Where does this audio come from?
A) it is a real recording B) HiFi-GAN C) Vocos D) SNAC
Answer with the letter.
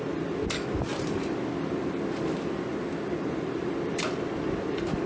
A